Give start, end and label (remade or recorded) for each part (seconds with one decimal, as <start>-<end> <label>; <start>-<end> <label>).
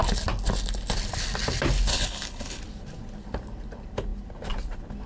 0.0-1.9 recorded; 1.9-2.6 remade; 2.6-5.1 recorded